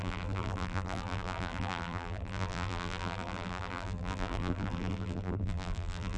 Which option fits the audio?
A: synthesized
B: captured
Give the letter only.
A